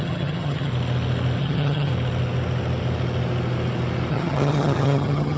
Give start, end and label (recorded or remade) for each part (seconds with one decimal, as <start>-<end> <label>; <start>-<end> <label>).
0.0-0.7 remade; 0.7-1.4 recorded; 1.4-1.9 remade; 1.9-4.1 recorded; 4.1-5.4 remade